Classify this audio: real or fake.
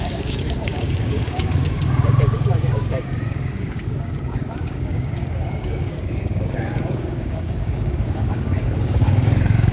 fake